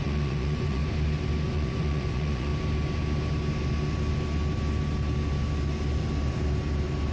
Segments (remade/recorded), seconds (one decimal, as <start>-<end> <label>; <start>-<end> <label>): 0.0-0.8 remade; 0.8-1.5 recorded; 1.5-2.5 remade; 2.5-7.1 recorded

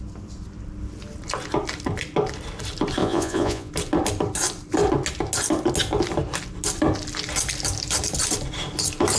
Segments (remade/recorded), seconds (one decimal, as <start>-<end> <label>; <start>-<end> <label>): 0.0-3.0 recorded; 3.0-3.7 remade; 3.7-9.2 recorded

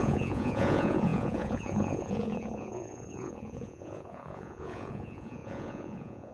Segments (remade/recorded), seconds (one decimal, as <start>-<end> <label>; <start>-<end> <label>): 0.0-6.3 remade

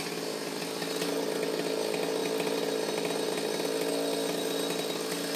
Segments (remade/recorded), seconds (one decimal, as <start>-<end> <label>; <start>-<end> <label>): 0.0-5.4 recorded

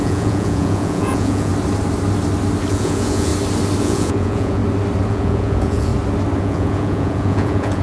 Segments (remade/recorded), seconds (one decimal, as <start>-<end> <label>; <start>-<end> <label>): 0.0-1.5 remade; 1.5-2.7 recorded; 2.7-3.3 remade; 3.3-3.8 recorded; 3.8-4.6 remade; 4.6-5.1 recorded; 5.1-5.9 remade; 5.9-6.4 recorded; 6.4-7.8 remade